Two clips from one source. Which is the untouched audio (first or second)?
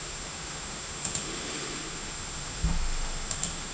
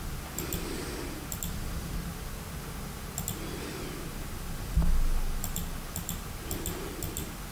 second